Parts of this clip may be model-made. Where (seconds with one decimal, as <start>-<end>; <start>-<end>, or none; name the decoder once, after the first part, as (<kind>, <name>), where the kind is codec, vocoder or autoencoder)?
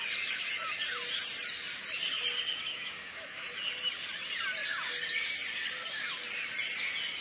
2.7-3.4 (autoencoder, DAC-VAE)